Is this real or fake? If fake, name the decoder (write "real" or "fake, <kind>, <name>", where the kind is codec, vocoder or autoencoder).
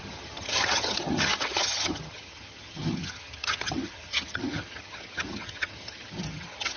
fake, vocoder, HiFi-GAN